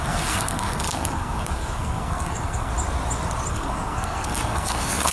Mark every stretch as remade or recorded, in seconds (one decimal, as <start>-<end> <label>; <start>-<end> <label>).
0.0-2.7 remade; 2.7-3.5 recorded; 3.5-5.1 remade